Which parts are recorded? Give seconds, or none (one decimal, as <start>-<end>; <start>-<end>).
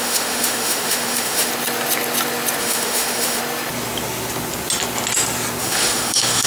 1.5-2.6; 3.4-5.6